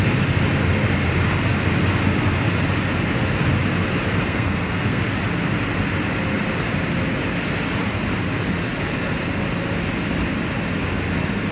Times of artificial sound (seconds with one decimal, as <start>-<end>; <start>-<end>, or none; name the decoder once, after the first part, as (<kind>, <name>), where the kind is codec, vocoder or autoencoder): 4.2-5.0 (codec, SNAC)